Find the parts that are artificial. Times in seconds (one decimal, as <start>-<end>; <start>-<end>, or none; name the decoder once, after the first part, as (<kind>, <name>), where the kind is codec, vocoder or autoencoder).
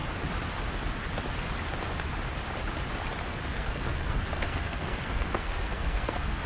3.5-6.5 (codec, SNAC)